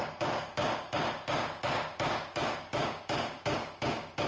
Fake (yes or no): yes